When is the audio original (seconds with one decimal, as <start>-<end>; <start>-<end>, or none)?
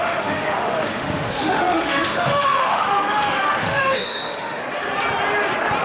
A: 4.6-5.8